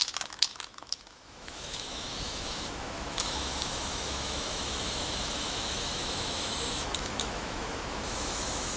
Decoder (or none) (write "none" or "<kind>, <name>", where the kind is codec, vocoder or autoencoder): autoencoder, DAC-VAE